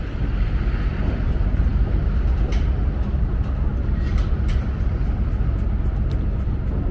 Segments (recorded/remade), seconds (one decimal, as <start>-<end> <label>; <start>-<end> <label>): 0.0-6.9 recorded